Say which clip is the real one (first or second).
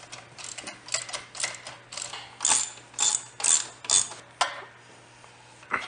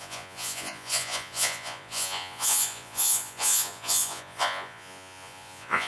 first